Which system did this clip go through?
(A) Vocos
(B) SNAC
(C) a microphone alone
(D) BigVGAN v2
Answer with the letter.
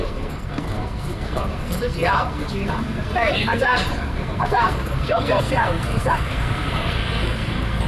B